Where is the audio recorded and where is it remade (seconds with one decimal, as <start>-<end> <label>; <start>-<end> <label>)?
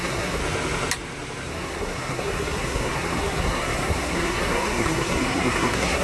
0.0-0.4 remade; 0.4-1.5 recorded; 1.5-6.0 remade